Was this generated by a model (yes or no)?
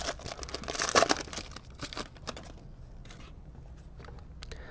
no